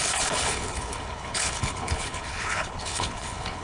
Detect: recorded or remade remade